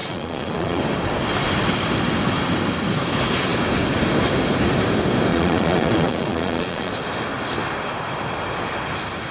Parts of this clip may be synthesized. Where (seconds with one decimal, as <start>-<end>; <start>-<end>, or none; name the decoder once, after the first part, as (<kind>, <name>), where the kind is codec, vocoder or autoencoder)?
0.0-0.8 (vocoder, Vocos); 5.3-6.9